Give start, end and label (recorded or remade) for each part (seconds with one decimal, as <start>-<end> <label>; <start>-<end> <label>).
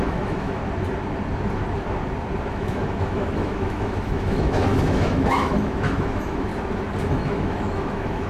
0.0-0.6 remade; 0.6-2.5 recorded; 2.5-6.5 remade; 6.5-7.1 recorded; 7.1-8.3 remade